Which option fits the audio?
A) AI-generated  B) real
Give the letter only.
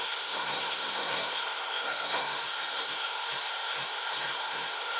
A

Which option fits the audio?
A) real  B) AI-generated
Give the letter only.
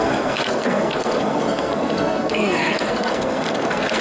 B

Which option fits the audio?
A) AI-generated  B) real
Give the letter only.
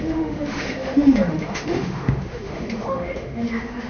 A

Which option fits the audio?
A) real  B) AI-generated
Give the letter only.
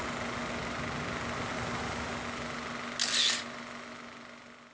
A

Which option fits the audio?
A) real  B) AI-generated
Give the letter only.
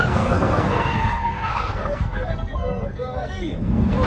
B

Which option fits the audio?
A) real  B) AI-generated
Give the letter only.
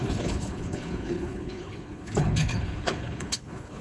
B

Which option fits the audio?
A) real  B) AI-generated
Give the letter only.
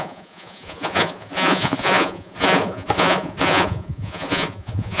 B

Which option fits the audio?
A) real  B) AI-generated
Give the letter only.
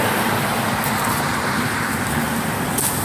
A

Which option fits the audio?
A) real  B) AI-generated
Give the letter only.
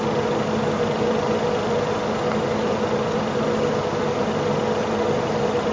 A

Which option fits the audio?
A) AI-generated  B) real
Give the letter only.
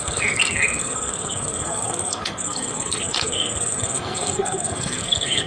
A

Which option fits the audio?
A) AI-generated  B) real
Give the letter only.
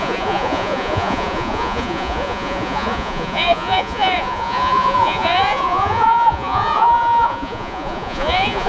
A